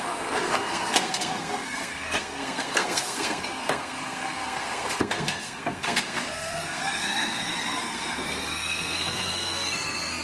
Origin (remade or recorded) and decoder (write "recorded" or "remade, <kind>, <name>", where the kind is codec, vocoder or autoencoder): remade, codec, SNAC